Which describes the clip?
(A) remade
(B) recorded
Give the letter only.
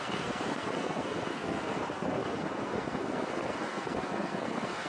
A